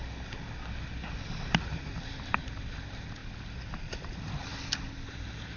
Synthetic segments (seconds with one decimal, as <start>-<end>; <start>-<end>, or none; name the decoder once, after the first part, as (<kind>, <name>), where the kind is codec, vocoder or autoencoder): 1.6-3.2 (vocoder, BigVGAN v2); 3.8-4.5; 5.1-5.6

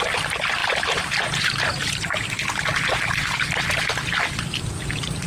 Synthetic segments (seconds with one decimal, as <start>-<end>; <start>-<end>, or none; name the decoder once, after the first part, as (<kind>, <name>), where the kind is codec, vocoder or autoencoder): none

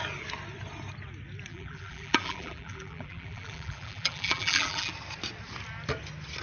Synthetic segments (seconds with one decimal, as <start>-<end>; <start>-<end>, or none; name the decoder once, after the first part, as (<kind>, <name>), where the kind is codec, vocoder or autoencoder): 1.5-4.9 (vocoder, BigVGAN v2)

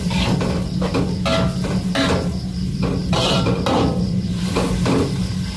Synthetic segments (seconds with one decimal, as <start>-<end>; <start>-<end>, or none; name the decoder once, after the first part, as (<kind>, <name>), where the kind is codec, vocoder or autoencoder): 3.0-4.5 (vocoder, BigVGAN v2)